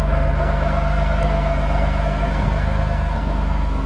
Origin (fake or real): fake